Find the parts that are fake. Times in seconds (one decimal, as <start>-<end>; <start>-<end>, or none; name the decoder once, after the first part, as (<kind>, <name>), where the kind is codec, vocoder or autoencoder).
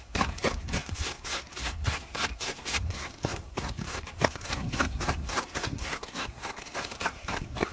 0.0-7.7 (codec, SNAC)